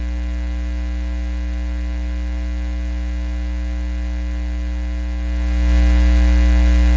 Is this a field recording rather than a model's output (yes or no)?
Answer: yes